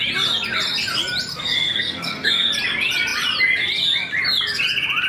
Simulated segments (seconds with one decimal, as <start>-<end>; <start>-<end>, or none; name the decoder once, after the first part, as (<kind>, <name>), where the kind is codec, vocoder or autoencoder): 1.3-2.5 (codec, SNAC)